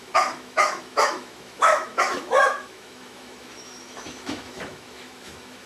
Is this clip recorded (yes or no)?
no